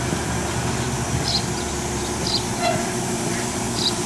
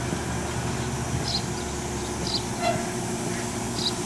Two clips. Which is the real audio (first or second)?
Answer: second